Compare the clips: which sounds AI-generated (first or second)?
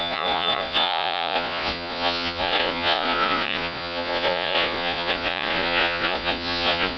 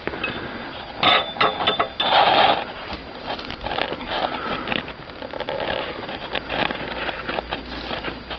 first